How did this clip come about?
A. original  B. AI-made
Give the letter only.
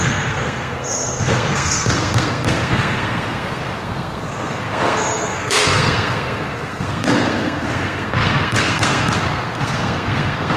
B